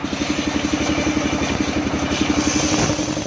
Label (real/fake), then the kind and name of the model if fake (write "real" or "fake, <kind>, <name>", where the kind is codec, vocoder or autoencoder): real